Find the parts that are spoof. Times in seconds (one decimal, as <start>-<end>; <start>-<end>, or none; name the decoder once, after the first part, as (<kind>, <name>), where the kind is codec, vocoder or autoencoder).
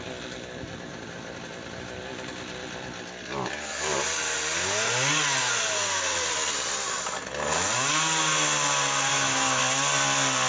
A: 9.1-9.6 (autoencoder, DAC-VAE)